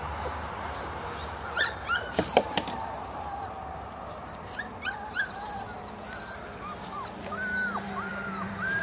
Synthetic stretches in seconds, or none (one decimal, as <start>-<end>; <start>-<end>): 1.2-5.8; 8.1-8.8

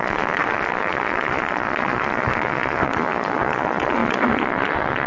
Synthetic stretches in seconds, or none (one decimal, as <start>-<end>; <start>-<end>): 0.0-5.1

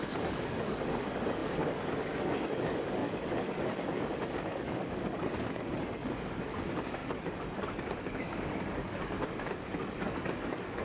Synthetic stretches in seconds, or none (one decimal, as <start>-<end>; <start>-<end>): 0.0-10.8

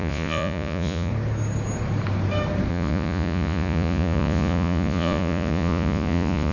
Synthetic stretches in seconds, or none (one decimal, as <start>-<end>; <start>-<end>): 0.0-1.1; 2.7-6.5